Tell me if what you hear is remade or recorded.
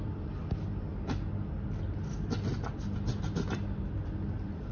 recorded